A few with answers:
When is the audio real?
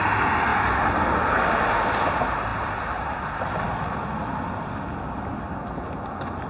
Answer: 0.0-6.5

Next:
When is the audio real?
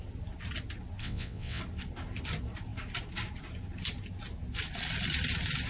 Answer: 0.0-1.0; 1.6-5.7